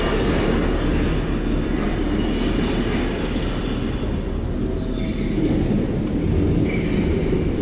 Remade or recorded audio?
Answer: recorded